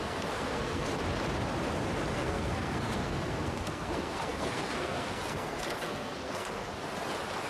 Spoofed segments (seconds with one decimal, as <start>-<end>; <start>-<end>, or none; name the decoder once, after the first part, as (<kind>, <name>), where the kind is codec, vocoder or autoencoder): 0.0-0.9 (codec, SNAC); 2.1-6.7